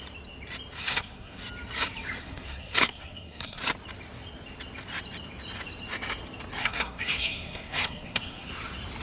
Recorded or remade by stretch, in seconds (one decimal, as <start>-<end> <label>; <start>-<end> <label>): 0.0-0.8 recorded; 0.8-1.4 remade; 1.4-2.2 recorded; 2.2-3.6 remade; 3.6-6.6 recorded; 6.6-8.5 remade; 8.5-9.0 recorded